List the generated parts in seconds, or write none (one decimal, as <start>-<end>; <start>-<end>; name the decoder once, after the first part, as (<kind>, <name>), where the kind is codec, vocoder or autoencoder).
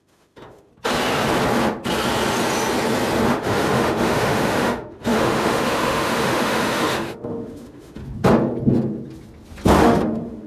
0.0-0.7 (autoencoder, DAC-VAE); 3.3-8.0; 9.8-10.5